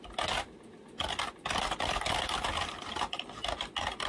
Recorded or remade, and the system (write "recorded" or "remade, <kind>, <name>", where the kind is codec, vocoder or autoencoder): recorded